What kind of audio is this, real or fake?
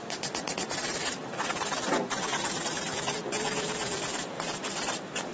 fake